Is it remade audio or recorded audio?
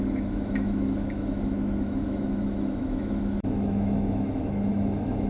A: remade